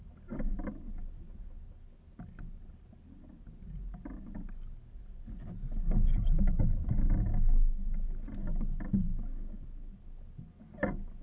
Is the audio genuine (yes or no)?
yes